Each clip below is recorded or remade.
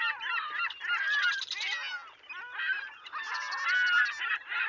recorded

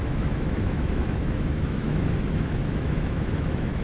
remade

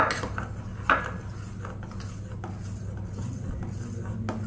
recorded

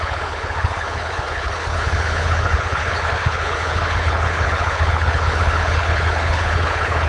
remade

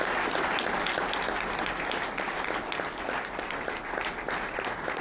recorded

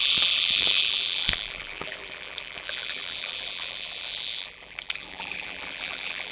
remade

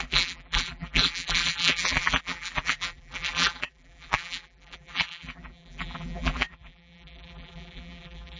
remade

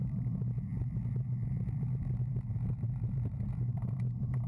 recorded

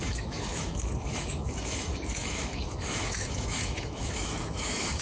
remade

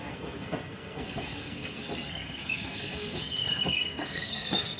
remade